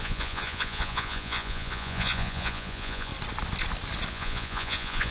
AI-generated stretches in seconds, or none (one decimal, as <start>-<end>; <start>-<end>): 0.0-3.1; 4.1-5.1